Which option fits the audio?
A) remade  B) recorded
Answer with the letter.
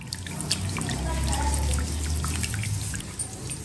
B